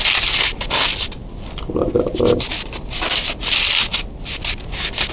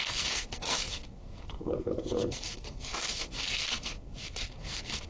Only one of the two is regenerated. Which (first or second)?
second